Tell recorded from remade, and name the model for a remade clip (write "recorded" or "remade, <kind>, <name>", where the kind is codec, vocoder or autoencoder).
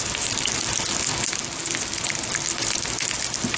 recorded